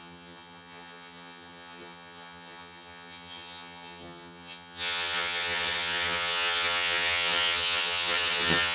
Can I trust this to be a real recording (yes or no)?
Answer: no